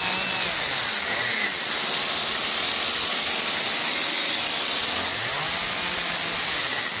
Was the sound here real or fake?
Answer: real